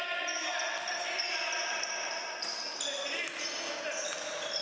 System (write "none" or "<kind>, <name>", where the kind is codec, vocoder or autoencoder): none